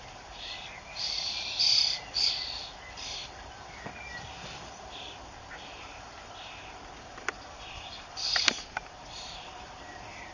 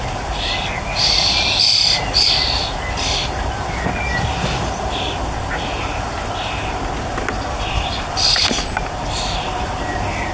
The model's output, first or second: first